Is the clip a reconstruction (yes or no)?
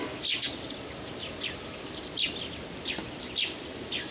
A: no